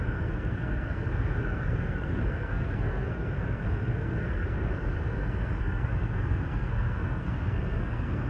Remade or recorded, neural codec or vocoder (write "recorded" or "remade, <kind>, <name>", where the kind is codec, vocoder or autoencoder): remade, codec, SNAC